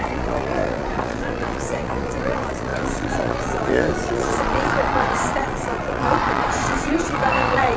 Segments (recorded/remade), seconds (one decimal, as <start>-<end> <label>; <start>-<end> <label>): 0.0-7.8 remade